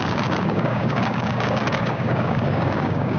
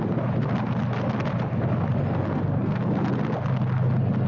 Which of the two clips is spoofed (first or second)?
first